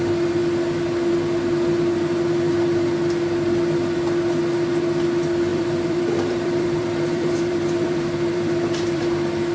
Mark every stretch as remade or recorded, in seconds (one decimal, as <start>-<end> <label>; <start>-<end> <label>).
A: 0.0-5.5 recorded; 5.5-9.0 remade; 9.0-9.5 recorded